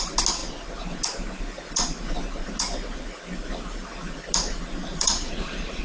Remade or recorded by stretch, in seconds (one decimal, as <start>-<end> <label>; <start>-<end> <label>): 0.0-4.9 recorded; 4.9-5.8 remade